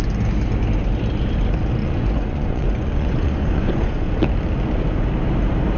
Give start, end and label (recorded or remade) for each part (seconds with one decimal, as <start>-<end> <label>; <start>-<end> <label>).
0.0-1.8 recorded; 1.8-4.1 remade; 4.1-5.8 recorded